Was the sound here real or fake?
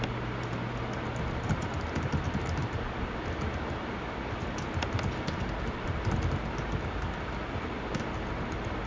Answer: real